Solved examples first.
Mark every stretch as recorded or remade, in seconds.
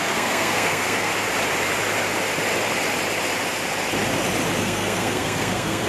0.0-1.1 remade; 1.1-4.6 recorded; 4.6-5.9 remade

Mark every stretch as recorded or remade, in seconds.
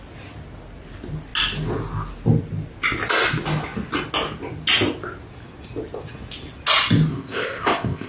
0.0-7.1 recorded; 7.1-8.1 remade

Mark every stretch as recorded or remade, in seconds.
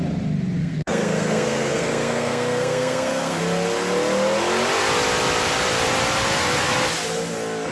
0.0-0.6 recorded; 0.6-3.4 remade; 3.4-7.7 recorded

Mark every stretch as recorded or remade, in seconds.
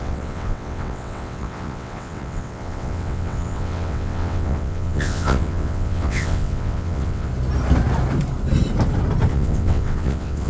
0.0-7.3 remade; 7.3-9.3 recorded; 9.3-10.5 remade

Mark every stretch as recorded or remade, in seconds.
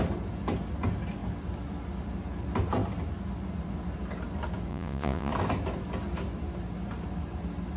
0.0-4.7 recorded; 4.7-5.3 remade; 5.3-7.8 recorded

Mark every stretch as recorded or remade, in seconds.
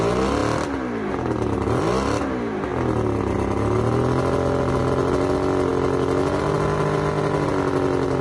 0.0-8.2 recorded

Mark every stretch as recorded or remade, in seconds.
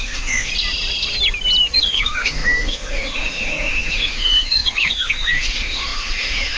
0.0-0.5 remade; 0.5-1.8 recorded; 1.8-6.6 remade